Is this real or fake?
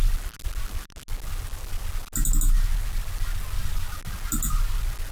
real